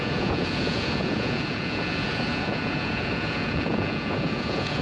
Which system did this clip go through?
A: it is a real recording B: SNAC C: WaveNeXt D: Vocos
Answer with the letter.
D